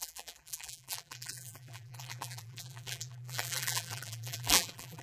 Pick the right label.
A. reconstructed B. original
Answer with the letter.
A